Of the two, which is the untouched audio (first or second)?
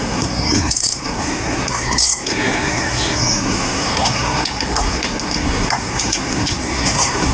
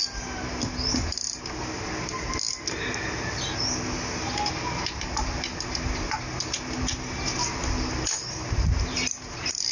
second